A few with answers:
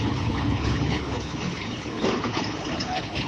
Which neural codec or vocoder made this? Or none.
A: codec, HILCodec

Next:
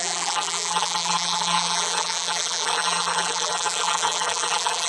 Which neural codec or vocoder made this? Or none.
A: vocoder, BigVGAN v2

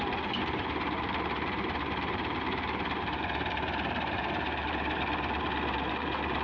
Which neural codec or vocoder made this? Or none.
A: vocoder, BigVGAN v2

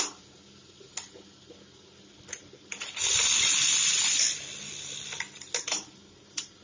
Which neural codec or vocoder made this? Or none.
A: none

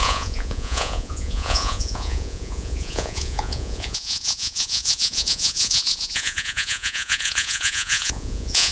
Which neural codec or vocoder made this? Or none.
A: vocoder, Vocos